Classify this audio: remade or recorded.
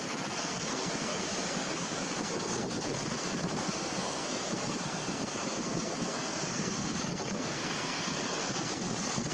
remade